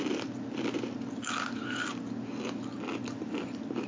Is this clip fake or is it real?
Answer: real